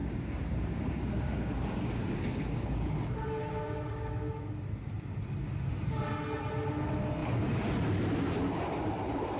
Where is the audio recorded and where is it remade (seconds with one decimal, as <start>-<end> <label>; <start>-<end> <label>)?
0.0-4.4 remade; 4.4-9.4 recorded